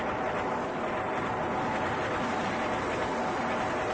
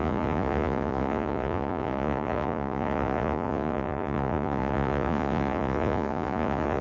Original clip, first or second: first